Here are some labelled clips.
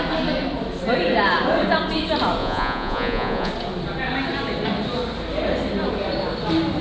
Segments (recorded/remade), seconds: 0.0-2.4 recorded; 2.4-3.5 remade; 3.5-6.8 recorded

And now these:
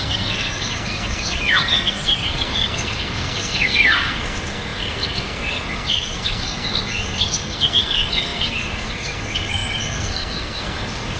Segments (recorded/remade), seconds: 0.0-11.2 remade

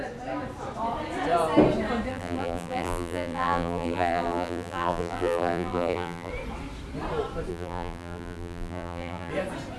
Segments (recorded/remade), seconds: 0.0-2.1 recorded; 2.1-6.3 remade; 6.3-7.5 recorded; 7.5-9.3 remade; 9.3-9.8 recorded

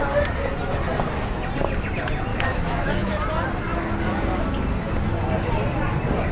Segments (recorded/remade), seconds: 0.0-2.3 recorded; 2.3-3.2 remade; 3.2-6.3 recorded

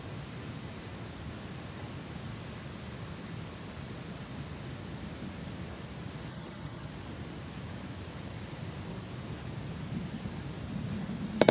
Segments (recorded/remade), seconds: 0.0-6.3 recorded; 6.3-6.9 remade; 6.9-11.5 recorded

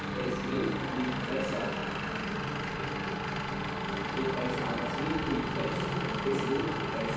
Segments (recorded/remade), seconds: 0.0-7.2 recorded